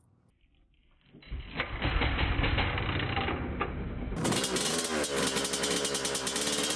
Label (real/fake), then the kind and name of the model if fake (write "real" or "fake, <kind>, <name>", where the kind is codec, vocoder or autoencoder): real